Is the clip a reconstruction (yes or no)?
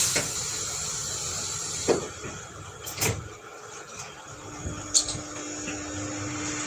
no